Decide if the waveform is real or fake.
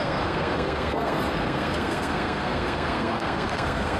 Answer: fake